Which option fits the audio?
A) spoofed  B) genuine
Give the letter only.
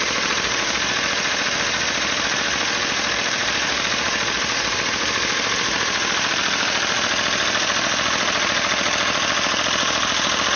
B